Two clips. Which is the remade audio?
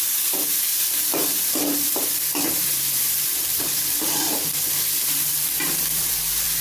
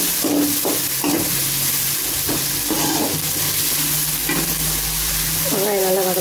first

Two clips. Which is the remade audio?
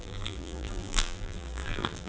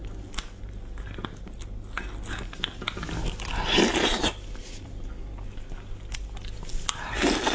first